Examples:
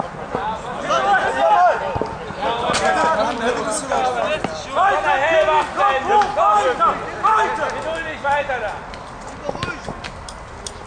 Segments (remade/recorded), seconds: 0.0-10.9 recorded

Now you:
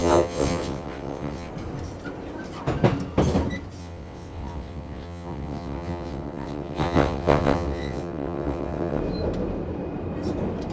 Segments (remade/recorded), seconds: 0.0-1.5 remade; 1.5-3.8 recorded; 3.8-9.0 remade; 9.0-10.7 recorded

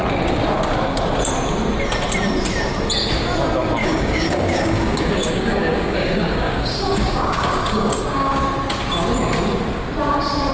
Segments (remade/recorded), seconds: 0.0-3.8 recorded; 3.8-8.4 remade; 8.4-10.5 recorded

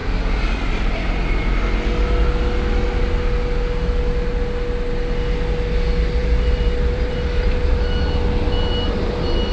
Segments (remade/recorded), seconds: 0.0-6.2 recorded; 6.2-7.8 remade; 7.8-9.5 recorded

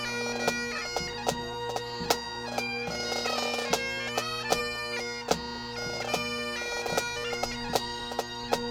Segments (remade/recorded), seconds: 0.0-8.7 recorded